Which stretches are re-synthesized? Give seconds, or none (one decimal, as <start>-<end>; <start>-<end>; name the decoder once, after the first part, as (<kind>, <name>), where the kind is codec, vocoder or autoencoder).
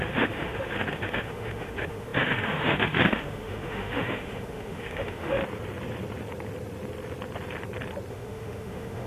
0.0-5.4 (autoencoder, DAC-VAE); 8.1-9.1